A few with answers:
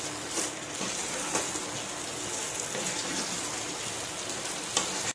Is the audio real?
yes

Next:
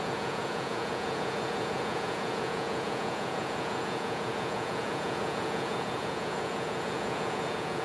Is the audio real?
no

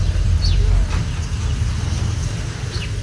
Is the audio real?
yes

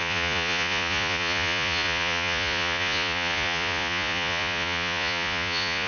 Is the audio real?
no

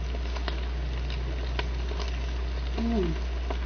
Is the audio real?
yes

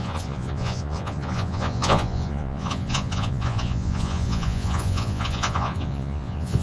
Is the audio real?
no